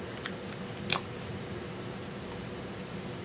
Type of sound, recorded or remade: recorded